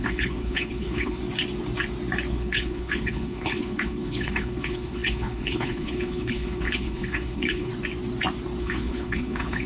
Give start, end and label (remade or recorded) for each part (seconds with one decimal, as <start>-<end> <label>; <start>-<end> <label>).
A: 0.0-1.2 remade; 1.2-2.3 recorded; 2.3-7.7 remade; 7.7-8.6 recorded; 8.6-9.7 remade